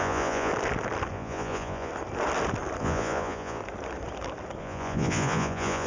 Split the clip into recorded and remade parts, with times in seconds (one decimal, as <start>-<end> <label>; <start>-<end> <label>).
0.0-0.5 remade; 0.5-1.1 recorded; 1.1-1.9 remade; 1.9-2.8 recorded; 2.8-3.6 remade; 3.6-4.6 recorded; 4.6-5.9 remade